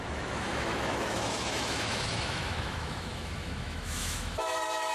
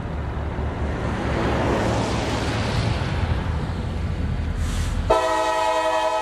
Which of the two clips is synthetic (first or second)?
first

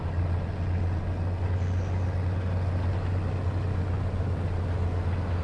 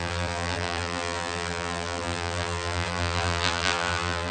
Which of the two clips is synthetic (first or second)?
second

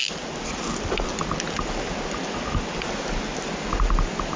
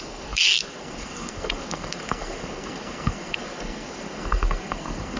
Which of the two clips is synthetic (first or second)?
second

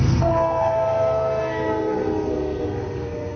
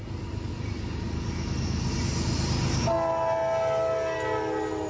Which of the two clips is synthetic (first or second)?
first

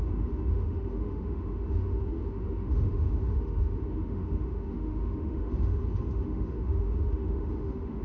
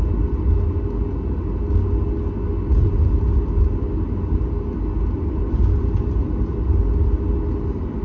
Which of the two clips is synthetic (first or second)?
first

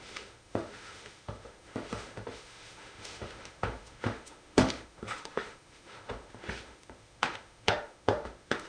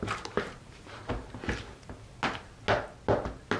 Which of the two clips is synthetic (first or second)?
first